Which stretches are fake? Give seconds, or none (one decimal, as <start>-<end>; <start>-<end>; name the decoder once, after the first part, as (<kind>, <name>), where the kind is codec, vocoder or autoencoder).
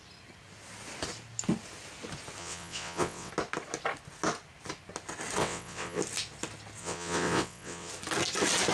2.4-3.3 (vocoder, WaveNeXt); 5.4-6.0; 6.8-7.9